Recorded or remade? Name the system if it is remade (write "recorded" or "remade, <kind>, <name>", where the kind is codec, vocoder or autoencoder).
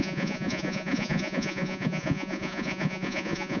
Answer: remade, vocoder, Vocos